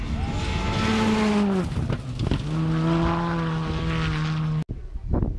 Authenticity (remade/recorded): recorded